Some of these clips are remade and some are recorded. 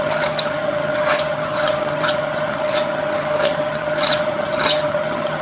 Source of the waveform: remade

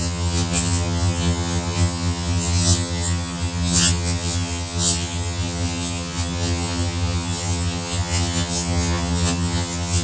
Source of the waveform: remade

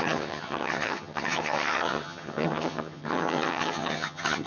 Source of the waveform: remade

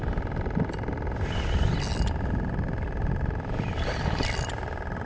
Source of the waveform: recorded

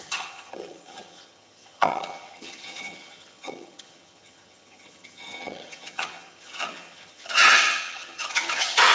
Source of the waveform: remade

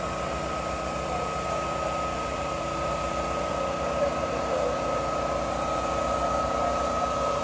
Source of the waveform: recorded